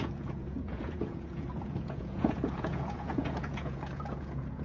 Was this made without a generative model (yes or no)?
no